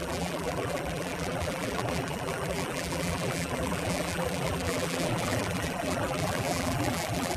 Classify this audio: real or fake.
fake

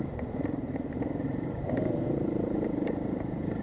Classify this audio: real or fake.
fake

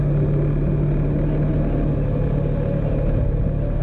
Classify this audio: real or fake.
real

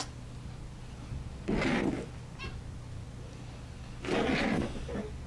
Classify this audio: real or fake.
real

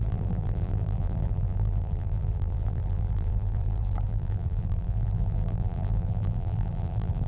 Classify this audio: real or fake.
fake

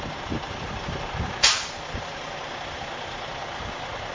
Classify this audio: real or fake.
fake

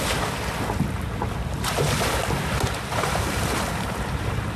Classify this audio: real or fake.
real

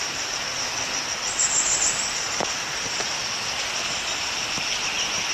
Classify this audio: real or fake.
real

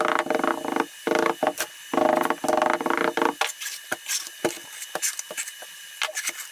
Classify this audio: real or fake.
real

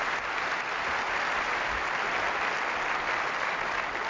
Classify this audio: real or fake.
real